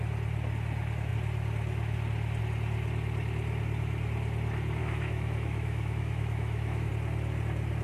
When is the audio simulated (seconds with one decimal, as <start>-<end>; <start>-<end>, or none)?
4.8-6.9